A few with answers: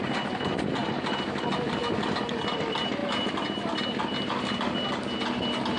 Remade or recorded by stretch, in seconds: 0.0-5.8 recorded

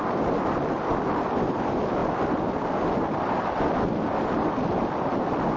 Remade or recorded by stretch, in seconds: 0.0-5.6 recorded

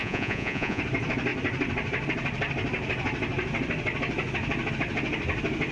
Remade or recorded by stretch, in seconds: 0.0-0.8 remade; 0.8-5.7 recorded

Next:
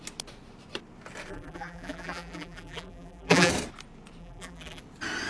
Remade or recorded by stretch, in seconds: 0.0-1.3 recorded; 1.3-3.5 remade; 3.5-4.2 recorded; 4.2-4.8 remade; 4.8-5.3 recorded

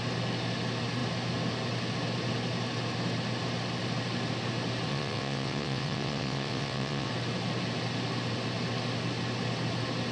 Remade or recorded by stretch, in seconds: 0.0-4.9 recorded; 4.9-7.1 remade; 7.1-10.1 recorded

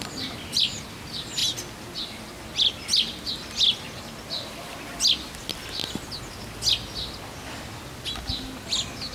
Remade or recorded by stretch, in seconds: 0.0-9.1 recorded